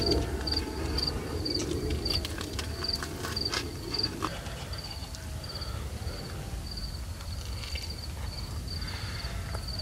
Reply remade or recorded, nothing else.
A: recorded